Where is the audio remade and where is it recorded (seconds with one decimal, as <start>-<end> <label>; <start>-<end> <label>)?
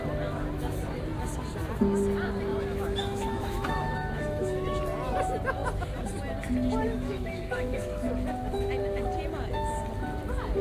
0.0-2.5 recorded; 2.5-4.8 remade; 4.8-6.8 recorded; 6.8-8.1 remade; 8.1-10.6 recorded